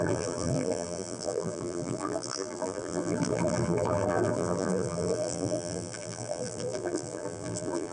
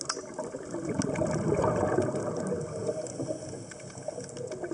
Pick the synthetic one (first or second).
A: first